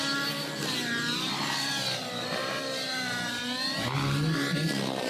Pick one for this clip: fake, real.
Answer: real